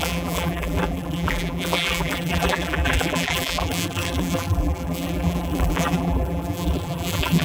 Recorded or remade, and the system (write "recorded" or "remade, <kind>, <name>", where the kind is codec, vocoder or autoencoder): remade, vocoder, BigVGAN v2